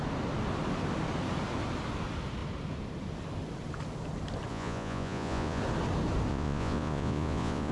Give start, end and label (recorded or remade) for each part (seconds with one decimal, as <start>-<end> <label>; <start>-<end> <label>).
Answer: 0.0-4.5 recorded; 4.5-5.6 remade; 5.6-6.3 recorded; 6.3-7.7 remade